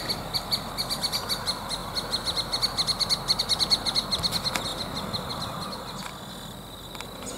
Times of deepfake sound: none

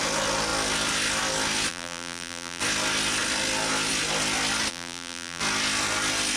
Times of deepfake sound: 1.7-2.6 (vocoder, BigVGAN v2); 4.7-5.4